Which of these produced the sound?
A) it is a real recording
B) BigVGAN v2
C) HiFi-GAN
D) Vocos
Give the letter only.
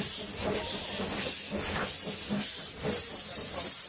A